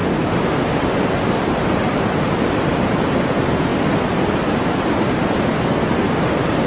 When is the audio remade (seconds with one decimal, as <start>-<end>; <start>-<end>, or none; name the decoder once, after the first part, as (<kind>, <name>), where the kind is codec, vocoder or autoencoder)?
0.0-2.9 (vocoder, BigVGAN v2)